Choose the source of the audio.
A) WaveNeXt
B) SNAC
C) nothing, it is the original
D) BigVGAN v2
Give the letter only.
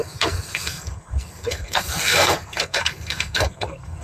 B